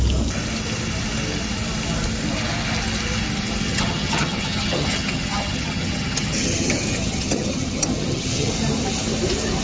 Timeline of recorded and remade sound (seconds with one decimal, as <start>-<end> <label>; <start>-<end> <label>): 0.0-3.7 recorded; 3.7-8.5 remade; 8.5-9.6 recorded